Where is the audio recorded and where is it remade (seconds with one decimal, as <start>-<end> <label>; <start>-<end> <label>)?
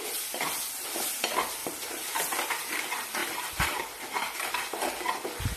0.0-3.2 recorded; 3.2-4.5 remade; 4.5-5.6 recorded